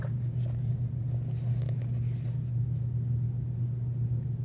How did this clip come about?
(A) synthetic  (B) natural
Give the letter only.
B